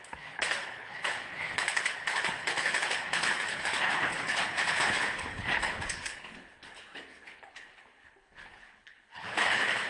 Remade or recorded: remade